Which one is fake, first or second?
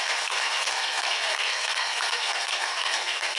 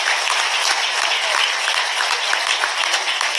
first